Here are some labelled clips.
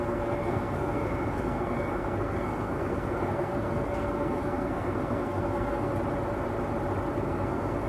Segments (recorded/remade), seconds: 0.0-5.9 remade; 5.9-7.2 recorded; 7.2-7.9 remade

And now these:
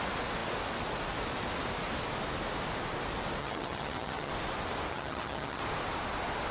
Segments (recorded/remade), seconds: 0.0-3.4 recorded; 3.4-4.3 remade; 4.3-4.9 recorded; 4.9-5.6 remade; 5.6-6.5 recorded